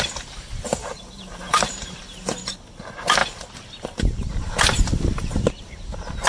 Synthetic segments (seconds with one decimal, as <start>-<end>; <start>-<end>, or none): 0.8-2.0